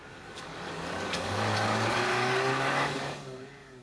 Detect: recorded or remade remade